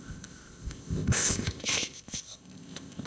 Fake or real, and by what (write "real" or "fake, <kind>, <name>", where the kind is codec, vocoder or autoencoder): fake, codec, ZipCodec